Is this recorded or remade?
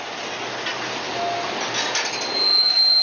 recorded